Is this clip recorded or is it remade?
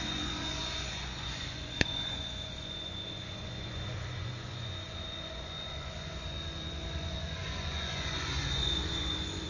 remade